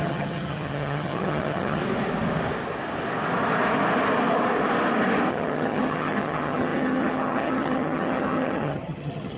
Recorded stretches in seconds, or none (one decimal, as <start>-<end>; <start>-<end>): 1.8-5.3